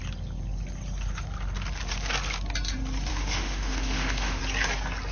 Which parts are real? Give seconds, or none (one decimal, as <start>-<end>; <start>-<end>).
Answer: 0.0-3.1; 4.4-5.1